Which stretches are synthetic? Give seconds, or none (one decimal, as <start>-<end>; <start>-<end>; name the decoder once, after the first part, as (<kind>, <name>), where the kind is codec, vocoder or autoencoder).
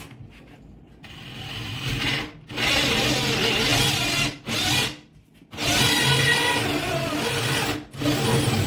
none